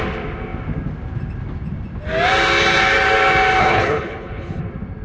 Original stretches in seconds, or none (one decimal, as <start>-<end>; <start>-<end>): 0.0-3.6; 4.6-5.0